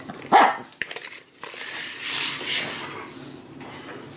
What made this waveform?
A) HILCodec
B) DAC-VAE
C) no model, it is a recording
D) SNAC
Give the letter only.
C